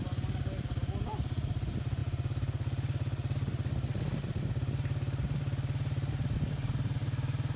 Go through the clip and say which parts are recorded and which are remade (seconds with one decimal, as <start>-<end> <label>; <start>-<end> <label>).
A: 0.0-7.6 recorded